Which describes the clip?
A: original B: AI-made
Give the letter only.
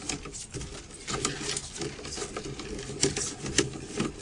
A